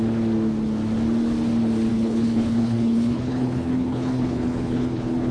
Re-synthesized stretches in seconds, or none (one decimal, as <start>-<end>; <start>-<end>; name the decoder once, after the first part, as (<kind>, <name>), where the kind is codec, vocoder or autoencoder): 1.9-5.3 (codec, HILCodec)